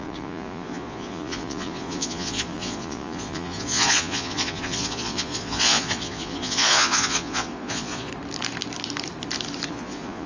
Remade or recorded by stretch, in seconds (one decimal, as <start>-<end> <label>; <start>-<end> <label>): 0.0-8.1 remade; 8.1-9.7 recorded; 9.7-10.3 remade